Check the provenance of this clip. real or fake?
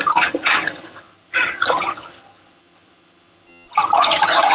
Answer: fake